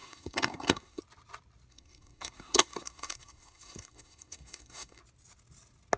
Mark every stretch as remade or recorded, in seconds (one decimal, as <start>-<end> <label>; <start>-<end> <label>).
0.0-1.0 remade; 1.0-1.7 recorded; 1.7-5.0 remade; 5.0-6.0 recorded